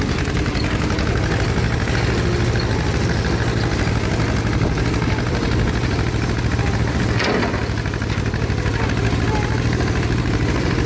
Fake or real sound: real